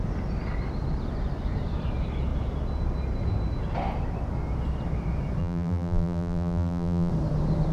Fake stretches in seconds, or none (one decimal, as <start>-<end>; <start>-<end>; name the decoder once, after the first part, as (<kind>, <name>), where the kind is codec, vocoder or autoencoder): 5.4-7.1 (vocoder, BigVGAN v2)